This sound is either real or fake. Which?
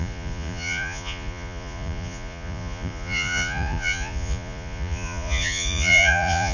fake